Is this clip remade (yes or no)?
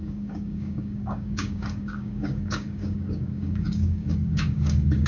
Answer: yes